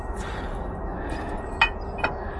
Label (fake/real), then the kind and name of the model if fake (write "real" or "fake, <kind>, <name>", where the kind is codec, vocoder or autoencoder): real